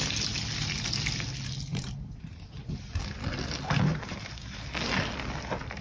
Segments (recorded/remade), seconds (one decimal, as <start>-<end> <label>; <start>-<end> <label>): 0.0-1.7 recorded; 1.7-2.9 remade; 2.9-3.9 recorded; 3.9-4.6 remade; 4.6-5.8 recorded

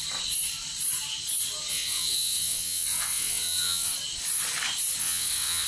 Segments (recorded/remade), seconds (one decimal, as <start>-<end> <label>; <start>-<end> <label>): 0.0-1.7 recorded; 1.7-3.9 remade; 3.9-5.0 recorded; 5.0-5.7 remade

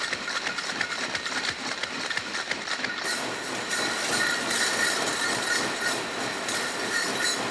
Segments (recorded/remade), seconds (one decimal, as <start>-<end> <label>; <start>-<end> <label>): 0.0-7.5 recorded

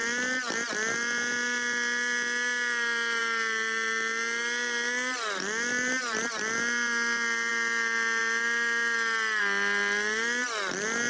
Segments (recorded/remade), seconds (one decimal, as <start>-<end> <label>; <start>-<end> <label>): 0.0-11.1 recorded

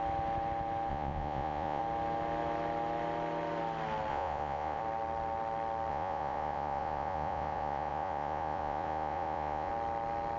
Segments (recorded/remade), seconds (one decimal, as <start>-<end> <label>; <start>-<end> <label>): 0.0-0.9 recorded; 0.9-1.8 remade; 1.8-4.1 recorded; 4.1-4.8 remade; 4.8-5.9 recorded; 5.9-9.7 remade; 9.7-10.4 recorded

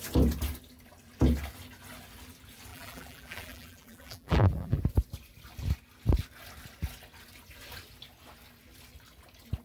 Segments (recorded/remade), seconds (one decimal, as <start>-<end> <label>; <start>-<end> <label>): 0.0-2.7 recorded; 2.7-4.8 remade; 4.8-9.6 recorded

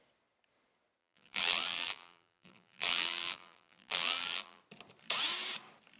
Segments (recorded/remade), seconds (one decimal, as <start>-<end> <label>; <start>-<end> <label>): 0.0-1.0 recorded; 1.0-4.6 remade; 4.6-6.0 recorded